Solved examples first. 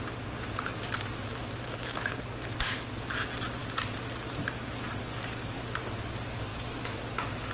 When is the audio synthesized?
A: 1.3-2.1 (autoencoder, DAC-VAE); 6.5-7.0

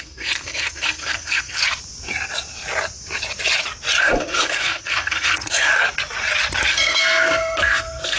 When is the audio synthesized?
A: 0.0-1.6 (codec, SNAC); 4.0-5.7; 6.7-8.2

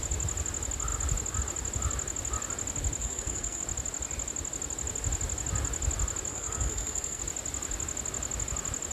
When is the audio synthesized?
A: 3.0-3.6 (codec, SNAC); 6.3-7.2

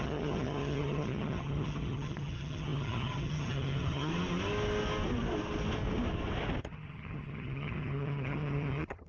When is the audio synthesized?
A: 0.0-4.1 (vocoder, HiFi-GAN); 6.6-9.1

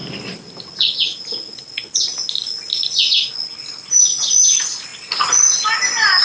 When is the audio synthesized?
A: none

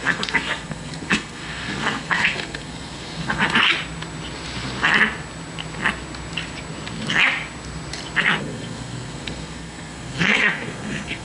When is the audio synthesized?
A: 0.0-3.7 (codec, SNAC); 8.4-11.2

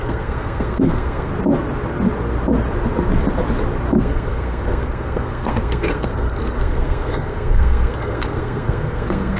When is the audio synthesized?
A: 0.0-1.3 (codec, SNAC); 4.0-9.4